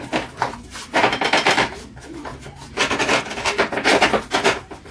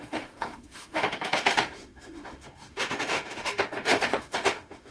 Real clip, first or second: first